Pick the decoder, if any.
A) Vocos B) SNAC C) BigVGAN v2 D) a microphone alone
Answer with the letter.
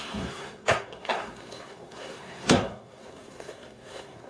B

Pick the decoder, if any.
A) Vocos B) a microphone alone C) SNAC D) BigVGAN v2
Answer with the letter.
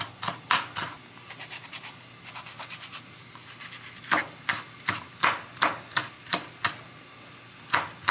B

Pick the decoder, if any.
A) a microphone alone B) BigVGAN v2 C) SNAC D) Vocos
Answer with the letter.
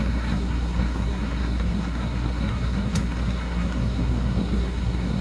C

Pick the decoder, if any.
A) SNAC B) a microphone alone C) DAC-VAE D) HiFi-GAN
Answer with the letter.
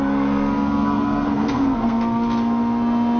A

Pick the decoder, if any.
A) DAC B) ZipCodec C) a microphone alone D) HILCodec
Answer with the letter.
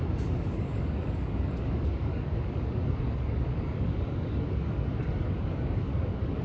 A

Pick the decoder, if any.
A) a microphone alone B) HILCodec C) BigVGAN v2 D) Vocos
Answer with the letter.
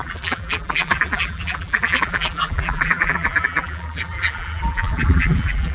C